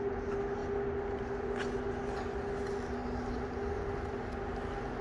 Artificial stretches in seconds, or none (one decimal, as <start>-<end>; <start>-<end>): none